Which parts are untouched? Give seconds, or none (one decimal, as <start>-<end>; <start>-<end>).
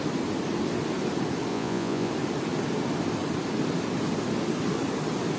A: 0.0-1.5; 2.1-5.4